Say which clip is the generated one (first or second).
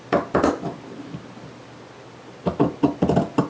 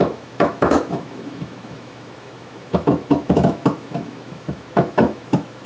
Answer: second